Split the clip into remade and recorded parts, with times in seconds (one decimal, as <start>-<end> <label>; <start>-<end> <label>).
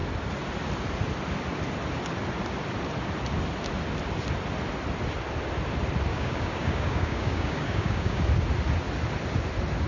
0.0-6.1 recorded; 6.1-8.2 remade; 8.2-9.9 recorded